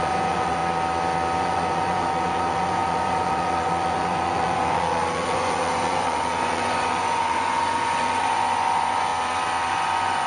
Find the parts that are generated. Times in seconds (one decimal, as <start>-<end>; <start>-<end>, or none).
0.0-0.6; 1.4-9.1; 9.7-10.3